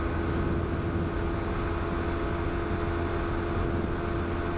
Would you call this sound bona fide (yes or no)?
yes